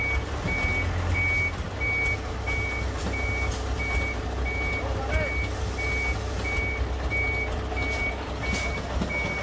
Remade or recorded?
recorded